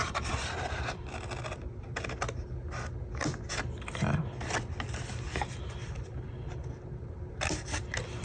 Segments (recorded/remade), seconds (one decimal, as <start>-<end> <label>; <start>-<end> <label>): 0.0-0.9 remade; 0.9-5.8 recorded; 5.8-6.4 remade; 6.4-8.2 recorded